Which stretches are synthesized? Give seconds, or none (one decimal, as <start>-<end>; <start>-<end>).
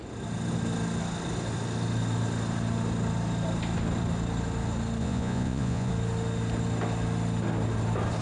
5.0-5.9